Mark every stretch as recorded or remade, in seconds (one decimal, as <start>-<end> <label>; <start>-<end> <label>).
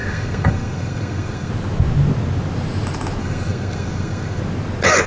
0.0-1.5 remade; 1.5-3.2 recorded; 3.2-4.4 remade; 4.4-5.1 recorded